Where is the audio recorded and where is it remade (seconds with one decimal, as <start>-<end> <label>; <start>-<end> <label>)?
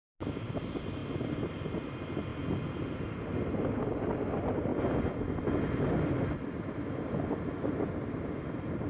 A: 0.0-8.9 recorded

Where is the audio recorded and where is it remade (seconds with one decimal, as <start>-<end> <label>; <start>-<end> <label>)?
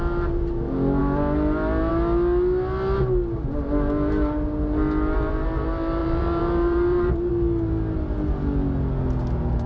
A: 0.0-6.0 recorded; 6.0-7.3 remade; 7.3-9.7 recorded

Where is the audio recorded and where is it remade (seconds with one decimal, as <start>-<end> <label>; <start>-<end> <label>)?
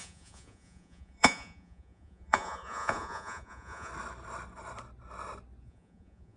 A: 0.0-3.9 remade; 3.9-5.6 recorded; 5.6-6.4 remade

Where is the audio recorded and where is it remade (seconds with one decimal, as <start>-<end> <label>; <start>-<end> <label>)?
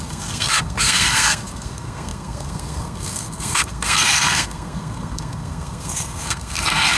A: 0.0-7.0 remade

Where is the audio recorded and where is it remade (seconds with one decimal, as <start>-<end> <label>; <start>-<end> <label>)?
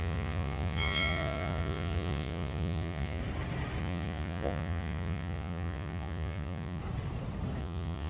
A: 0.0-3.2 remade; 3.2-3.8 recorded; 3.8-6.8 remade; 6.8-7.6 recorded; 7.6-8.1 remade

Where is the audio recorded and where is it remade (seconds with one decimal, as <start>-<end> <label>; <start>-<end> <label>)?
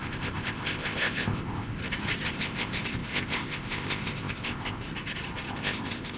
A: 0.0-1.8 remade; 1.8-2.3 recorded; 2.3-4.9 remade; 4.9-5.5 recorded; 5.5-6.2 remade